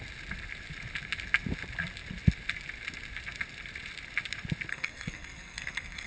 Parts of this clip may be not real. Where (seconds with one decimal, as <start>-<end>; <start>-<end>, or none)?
4.7-6.1